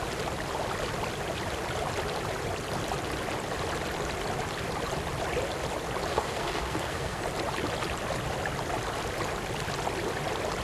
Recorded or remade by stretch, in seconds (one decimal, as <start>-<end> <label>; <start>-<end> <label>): 0.0-6.1 recorded; 6.1-7.2 remade; 7.2-10.6 recorded